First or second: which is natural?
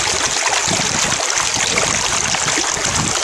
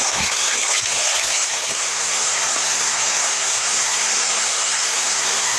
first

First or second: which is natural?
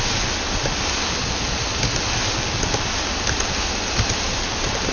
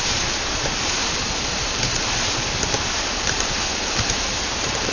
first